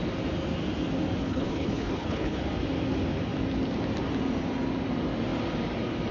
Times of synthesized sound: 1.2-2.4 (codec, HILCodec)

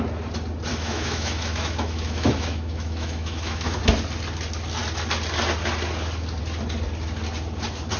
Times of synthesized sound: 0.7-3.8 (autoencoder, DAC-VAE)

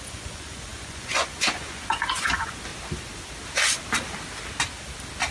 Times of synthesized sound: 0.0-2.7 (vocoder, Vocos)